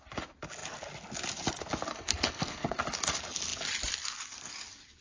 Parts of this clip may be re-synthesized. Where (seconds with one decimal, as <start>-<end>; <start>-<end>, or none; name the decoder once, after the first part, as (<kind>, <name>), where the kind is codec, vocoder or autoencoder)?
1.9-2.8 (codec, SNAC)